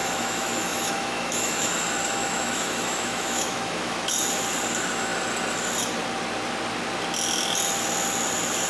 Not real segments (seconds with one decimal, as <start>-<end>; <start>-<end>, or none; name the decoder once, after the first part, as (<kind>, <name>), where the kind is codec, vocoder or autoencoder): 0.0-1.7 (autoencoder, DAC-VAE); 2.2-4.1

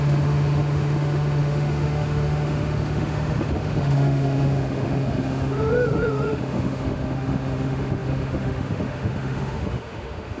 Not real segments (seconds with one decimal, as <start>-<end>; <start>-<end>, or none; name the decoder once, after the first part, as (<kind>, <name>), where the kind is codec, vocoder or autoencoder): 0.0-10.4 (autoencoder, DAC-VAE)

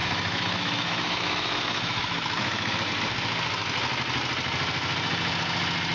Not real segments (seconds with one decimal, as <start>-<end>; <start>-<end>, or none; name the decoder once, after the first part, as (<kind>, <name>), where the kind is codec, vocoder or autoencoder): 0.0-2.9 (autoencoder, DAC-VAE)